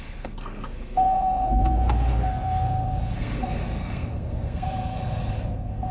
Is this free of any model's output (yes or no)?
no